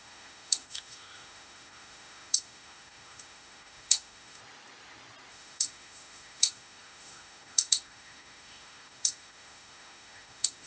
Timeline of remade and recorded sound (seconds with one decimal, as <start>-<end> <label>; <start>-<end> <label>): 0.0-4.4 remade; 4.4-5.3 recorded; 5.3-10.7 remade